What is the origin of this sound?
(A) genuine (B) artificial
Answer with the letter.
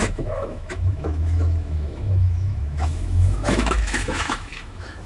B